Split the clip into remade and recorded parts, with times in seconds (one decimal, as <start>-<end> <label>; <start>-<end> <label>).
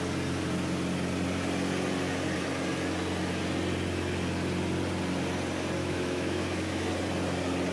0.0-5.8 recorded; 5.8-6.9 remade; 6.9-7.7 recorded